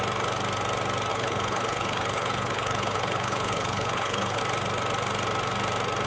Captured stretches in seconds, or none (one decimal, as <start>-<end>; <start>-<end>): 0.0-1.1; 4.4-6.1